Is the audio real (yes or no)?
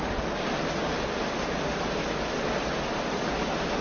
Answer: yes